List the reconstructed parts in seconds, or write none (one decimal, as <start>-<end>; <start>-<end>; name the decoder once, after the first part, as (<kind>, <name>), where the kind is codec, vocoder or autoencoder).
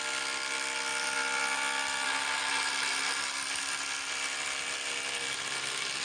0.9-3.0 (vocoder, BigVGAN v2)